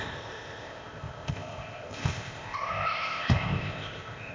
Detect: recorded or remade remade